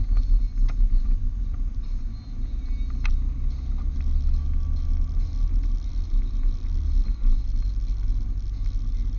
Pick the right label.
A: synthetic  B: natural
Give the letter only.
B